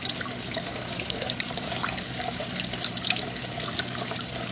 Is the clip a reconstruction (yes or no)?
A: yes